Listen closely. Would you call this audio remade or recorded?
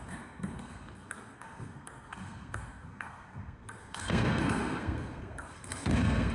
remade